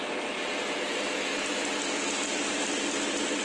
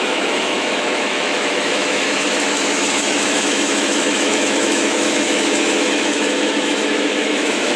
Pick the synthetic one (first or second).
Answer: second